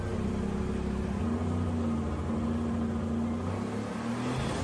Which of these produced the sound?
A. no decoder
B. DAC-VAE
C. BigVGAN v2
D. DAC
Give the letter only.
A